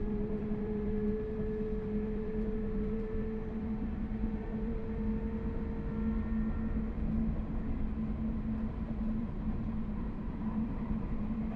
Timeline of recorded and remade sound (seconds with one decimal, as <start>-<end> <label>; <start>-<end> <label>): 0.0-4.8 remade; 4.8-9.2 recorded; 9.2-11.6 remade